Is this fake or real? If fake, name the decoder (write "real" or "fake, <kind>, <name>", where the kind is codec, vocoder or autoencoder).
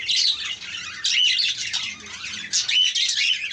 real